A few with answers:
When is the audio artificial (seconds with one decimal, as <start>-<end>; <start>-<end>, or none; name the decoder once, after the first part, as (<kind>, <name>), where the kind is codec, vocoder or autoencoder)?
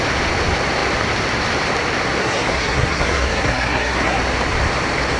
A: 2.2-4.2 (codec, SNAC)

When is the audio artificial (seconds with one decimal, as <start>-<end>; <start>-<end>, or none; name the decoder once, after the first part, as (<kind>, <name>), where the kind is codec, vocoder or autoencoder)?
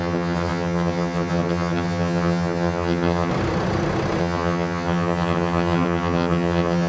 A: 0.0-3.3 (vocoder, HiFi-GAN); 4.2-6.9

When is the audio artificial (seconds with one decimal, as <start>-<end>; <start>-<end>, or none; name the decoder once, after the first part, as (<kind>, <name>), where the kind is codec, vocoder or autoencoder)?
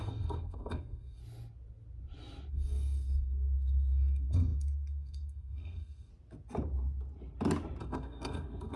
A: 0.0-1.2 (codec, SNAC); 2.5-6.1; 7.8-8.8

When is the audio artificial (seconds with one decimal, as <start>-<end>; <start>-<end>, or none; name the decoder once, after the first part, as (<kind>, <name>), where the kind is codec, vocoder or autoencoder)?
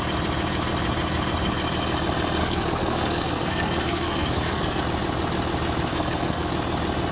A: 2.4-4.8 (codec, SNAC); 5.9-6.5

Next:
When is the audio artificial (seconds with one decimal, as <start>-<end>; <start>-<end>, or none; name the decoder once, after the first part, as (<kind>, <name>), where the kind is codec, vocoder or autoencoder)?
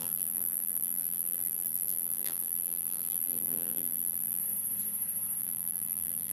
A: 0.0-4.4 (vocoder, BigVGAN v2); 5.4-6.3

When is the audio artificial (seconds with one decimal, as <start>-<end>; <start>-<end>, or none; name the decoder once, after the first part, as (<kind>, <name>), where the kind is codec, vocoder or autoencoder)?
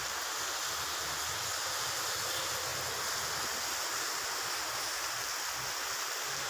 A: none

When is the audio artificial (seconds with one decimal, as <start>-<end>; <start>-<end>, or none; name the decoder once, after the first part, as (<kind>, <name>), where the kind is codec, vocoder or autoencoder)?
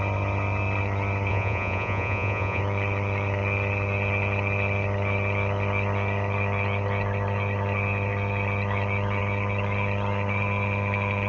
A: 1.3-2.6 (vocoder, Vocos)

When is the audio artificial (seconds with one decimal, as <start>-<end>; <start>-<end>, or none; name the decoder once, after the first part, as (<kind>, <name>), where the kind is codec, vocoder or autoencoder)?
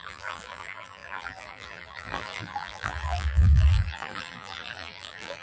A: 0.0-5.4 (vocoder, BigVGAN v2)